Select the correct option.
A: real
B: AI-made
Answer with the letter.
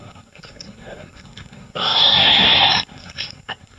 B